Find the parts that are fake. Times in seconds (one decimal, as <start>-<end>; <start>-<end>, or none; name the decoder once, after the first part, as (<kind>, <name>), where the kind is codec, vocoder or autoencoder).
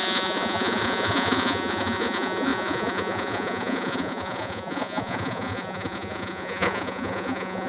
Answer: 0.0-7.7 (vocoder, Vocos)